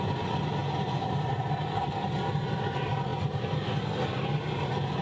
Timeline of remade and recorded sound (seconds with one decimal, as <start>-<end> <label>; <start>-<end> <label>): 0.0-5.0 recorded